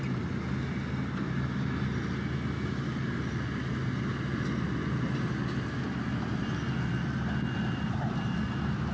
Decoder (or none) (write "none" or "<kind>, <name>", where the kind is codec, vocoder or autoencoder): none